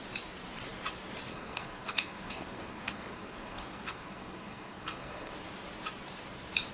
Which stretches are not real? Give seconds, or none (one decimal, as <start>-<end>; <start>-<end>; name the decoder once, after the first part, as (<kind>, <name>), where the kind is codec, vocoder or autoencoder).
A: 1.3-5.3 (codec, SNAC)